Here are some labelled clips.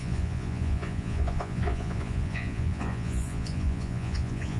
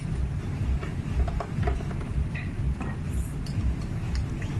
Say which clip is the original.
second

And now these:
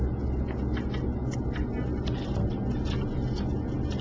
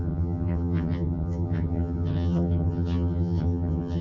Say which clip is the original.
first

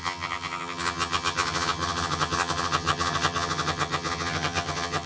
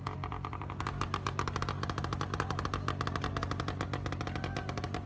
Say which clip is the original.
second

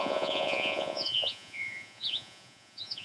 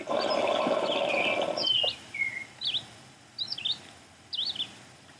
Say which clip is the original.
second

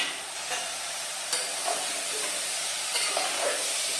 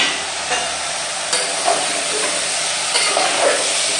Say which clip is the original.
second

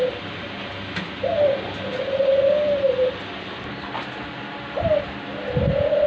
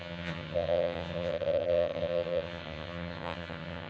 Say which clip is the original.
first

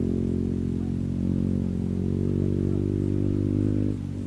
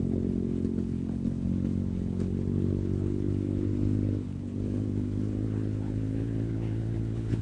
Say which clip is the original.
first